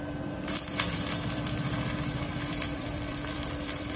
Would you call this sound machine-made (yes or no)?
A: yes